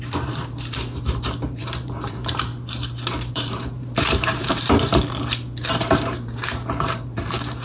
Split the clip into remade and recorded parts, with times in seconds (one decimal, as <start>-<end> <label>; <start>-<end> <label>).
0.0-2.5 remade; 2.5-3.3 recorded; 3.3-4.9 remade; 4.9-5.9 recorded; 5.9-7.6 remade